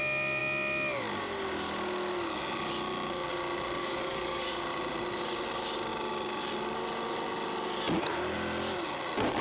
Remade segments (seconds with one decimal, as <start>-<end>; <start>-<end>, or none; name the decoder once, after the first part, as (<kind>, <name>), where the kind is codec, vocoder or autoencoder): 3.8-4.5 (codec, DAC)